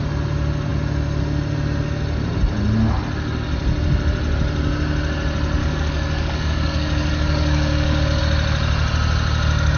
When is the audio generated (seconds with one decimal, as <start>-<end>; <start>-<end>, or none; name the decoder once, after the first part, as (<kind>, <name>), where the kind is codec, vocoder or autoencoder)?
5.6-8.2 (codec, DAC)